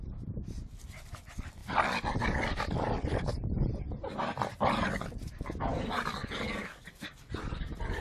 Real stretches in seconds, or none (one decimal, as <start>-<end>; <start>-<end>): 0.0-6.2; 7.3-8.0